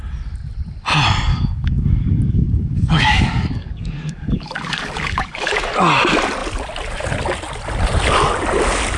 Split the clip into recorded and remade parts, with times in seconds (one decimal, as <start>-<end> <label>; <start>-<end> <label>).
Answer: 0.0-1.3 recorded; 1.3-5.7 remade; 5.7-9.0 recorded